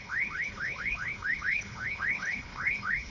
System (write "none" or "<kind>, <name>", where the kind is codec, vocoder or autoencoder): codec, HILCodec